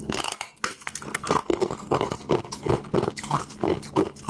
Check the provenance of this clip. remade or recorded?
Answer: remade